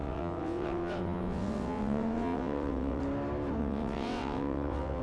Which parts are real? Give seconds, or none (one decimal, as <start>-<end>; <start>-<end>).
3.0-3.6